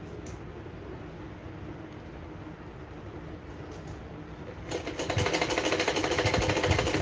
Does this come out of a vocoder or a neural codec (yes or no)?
no